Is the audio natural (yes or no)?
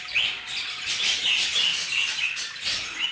yes